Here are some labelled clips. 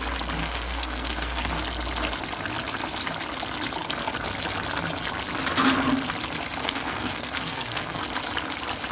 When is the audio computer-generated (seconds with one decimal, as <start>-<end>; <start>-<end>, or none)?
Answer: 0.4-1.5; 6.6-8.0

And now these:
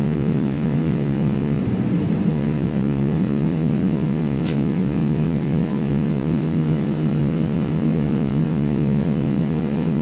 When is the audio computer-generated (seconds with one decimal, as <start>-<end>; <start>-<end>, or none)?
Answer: 0.0-1.6; 2.3-10.0

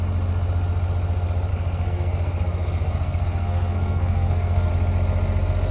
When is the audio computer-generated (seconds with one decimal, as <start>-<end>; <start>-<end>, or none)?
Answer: 1.5-4.7